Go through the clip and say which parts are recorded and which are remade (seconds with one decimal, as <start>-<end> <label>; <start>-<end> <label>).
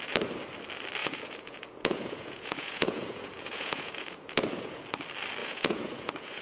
0.0-1.0 recorded; 1.0-4.8 remade; 4.8-5.4 recorded; 5.4-6.4 remade